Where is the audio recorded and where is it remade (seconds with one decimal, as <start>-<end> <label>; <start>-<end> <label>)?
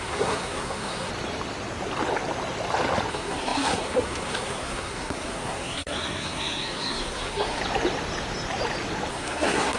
0.0-1.1 remade; 1.1-3.1 recorded; 3.1-7.6 remade; 7.6-9.1 recorded; 9.1-9.8 remade